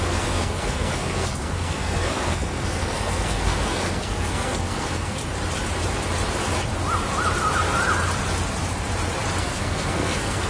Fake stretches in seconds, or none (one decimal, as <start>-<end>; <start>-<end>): 0.0-5.2; 9.4-10.5